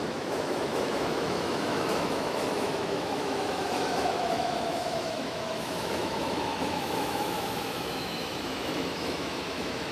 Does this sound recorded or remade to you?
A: remade